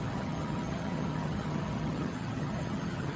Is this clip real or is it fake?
fake